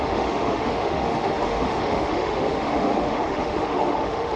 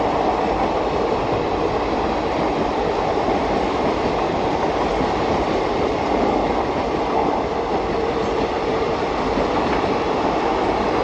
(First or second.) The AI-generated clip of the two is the first